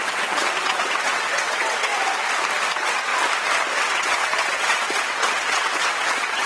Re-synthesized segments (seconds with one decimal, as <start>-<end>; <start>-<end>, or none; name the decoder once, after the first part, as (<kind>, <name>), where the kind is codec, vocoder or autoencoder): 0.0-1.9 (vocoder, WaveNeXt); 2.7-3.1; 3.8-6.5